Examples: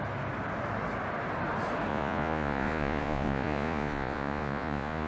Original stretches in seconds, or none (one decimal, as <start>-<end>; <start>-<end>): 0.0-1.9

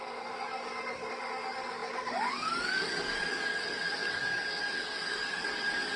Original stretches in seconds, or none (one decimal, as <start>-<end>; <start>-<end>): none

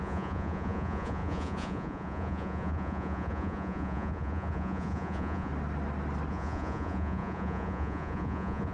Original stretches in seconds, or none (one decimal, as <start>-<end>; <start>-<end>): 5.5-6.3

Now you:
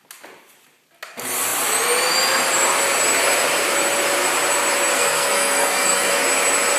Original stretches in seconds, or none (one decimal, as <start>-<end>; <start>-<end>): 0.0-4.9; 6.2-6.8

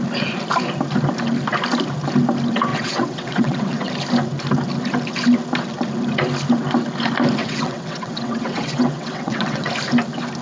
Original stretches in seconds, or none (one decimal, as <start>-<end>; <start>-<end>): 0.0-2.7; 3.9-7.4; 9.7-10.4

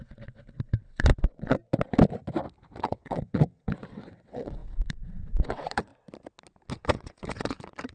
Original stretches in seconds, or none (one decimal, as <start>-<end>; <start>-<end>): 1.6-2.8; 5.9-6.7